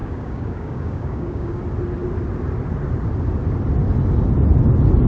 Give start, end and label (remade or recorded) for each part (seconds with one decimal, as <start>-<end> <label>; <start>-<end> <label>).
0.0-1.6 remade; 1.6-5.1 recorded